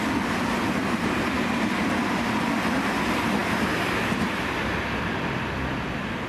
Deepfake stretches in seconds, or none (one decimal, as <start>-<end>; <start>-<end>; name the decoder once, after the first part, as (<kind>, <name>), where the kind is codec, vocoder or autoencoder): none